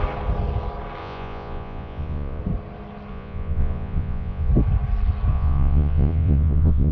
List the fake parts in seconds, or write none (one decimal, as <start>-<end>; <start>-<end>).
1.0-2.4; 3.1-4.5; 5.3-6.9